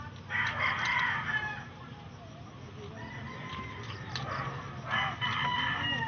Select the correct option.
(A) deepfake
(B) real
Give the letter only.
B